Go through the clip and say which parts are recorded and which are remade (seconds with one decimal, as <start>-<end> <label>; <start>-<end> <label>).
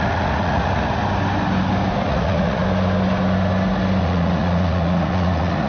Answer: 0.0-1.0 remade; 1.0-2.0 recorded; 2.0-2.6 remade; 2.6-4.0 recorded; 4.0-5.7 remade